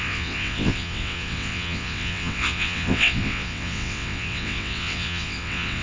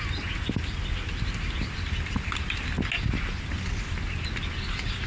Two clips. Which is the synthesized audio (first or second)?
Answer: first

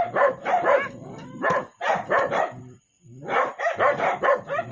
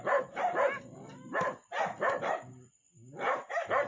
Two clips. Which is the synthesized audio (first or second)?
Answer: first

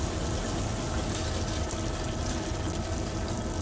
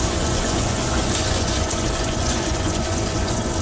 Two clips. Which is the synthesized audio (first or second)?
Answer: second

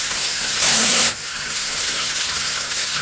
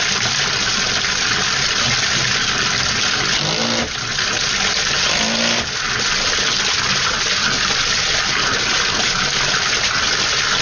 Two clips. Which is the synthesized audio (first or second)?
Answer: first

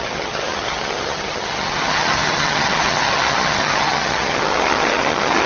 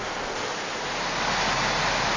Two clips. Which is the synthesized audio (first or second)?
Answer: first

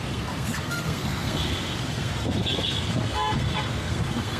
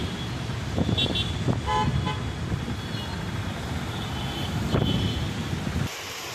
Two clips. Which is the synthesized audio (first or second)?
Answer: first